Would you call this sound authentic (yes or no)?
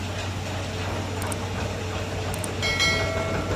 yes